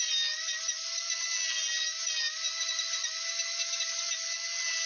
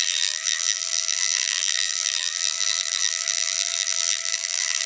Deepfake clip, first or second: second